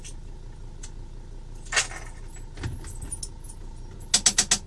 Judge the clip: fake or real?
real